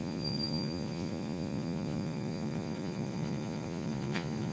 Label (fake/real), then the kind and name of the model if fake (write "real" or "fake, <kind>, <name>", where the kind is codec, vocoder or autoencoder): fake, vocoder, Vocos